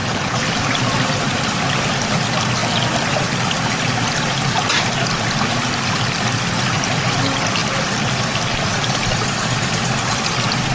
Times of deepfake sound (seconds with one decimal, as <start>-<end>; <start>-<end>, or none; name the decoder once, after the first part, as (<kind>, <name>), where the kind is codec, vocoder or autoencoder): 0.0-1.5 (vocoder, BigVGAN v2); 7.6-9.7